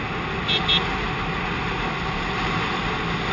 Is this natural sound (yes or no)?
yes